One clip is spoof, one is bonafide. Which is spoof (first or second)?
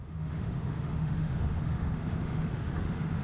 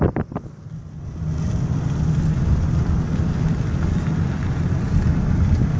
first